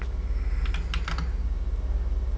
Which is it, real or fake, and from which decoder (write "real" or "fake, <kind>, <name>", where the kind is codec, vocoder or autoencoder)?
real